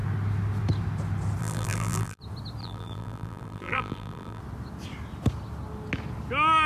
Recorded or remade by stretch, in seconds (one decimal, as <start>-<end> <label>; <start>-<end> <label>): 0.0-1.4 recorded; 1.4-2.2 remade; 2.2-2.6 recorded; 2.6-4.4 remade; 4.4-6.7 recorded